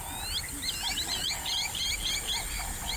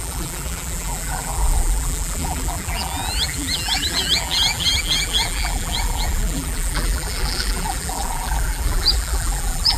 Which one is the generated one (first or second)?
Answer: second